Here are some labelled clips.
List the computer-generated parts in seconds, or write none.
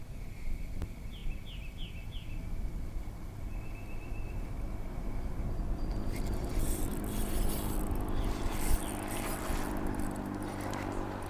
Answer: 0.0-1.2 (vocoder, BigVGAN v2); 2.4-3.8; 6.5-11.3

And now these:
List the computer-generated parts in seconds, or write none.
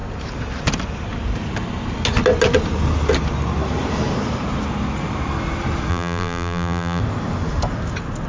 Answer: 5.9-7.0 (vocoder, BigVGAN v2)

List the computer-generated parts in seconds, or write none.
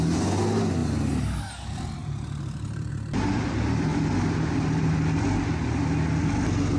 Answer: 2.0-2.9 (vocoder, BigVGAN v2)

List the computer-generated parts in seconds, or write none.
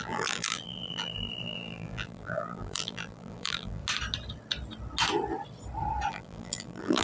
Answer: 0.0-3.8 (vocoder, BigVGAN v2); 6.1-7.0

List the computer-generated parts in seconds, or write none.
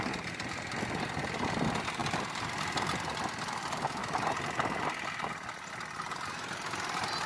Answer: 2.0-2.5 (vocoder, BigVGAN v2)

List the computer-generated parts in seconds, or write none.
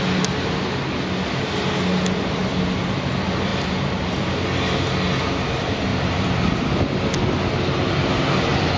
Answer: 3.5-4.3 (vocoder, BigVGAN v2); 5.9-6.5